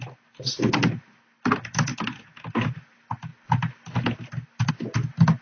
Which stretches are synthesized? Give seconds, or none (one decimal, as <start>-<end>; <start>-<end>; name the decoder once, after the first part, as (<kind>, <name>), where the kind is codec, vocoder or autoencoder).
none